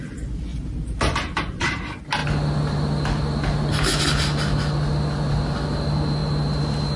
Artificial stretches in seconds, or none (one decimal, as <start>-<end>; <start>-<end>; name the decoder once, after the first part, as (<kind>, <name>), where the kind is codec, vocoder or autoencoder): none